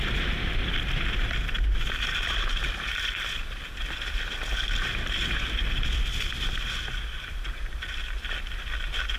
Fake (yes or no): yes